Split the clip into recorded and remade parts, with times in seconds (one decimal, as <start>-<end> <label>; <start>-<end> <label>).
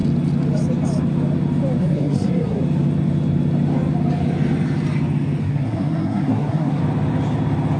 0.0-1.8 recorded; 1.8-2.6 remade; 2.6-5.4 recorded; 5.4-6.8 remade; 6.8-7.8 recorded